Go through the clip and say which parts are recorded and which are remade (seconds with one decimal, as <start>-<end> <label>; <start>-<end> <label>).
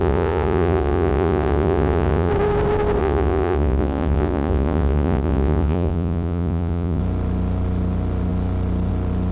0.0-2.3 remade; 2.3-3.0 recorded; 3.0-7.0 remade; 7.0-9.3 recorded